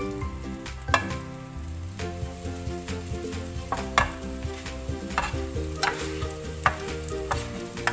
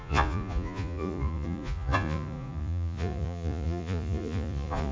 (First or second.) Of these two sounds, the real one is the first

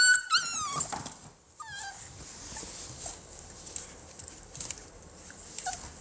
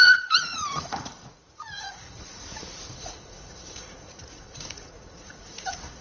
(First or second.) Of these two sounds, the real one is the first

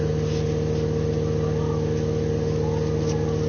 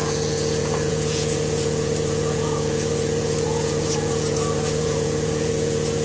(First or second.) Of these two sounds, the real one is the first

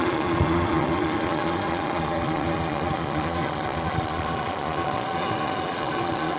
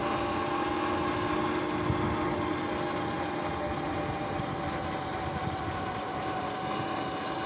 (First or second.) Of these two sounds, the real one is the second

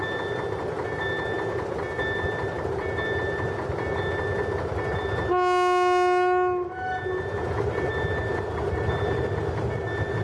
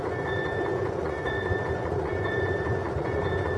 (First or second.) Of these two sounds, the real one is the first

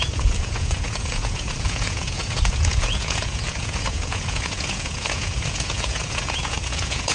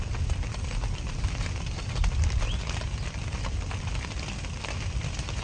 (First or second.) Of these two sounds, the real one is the second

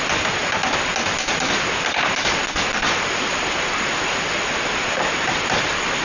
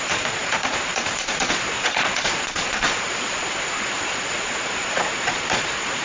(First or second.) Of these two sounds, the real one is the first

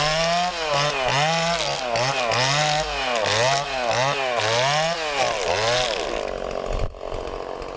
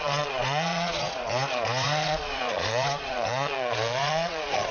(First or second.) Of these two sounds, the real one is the first